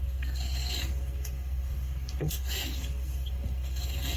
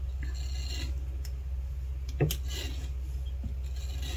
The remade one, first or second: first